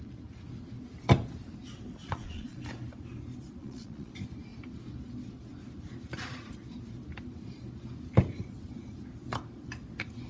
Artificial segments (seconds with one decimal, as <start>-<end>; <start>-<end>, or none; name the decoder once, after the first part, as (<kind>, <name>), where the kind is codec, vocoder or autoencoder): 2.0-2.6 (vocoder, Vocos); 3.6-4.1